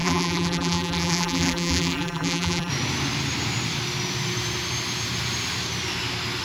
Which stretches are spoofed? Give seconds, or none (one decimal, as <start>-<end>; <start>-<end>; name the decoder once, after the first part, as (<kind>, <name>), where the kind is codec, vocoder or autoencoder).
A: 0.0-2.7 (vocoder, BigVGAN v2)